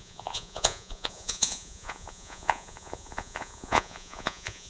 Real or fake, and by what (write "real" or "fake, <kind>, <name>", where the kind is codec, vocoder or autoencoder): fake, vocoder, Vocos